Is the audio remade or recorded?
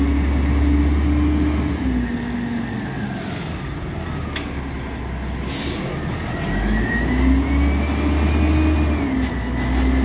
recorded